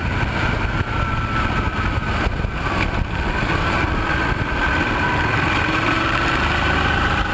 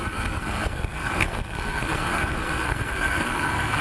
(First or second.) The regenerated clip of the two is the second